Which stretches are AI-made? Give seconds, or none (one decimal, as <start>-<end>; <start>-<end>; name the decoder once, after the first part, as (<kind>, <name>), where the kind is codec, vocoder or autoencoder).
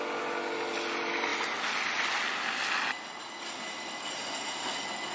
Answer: none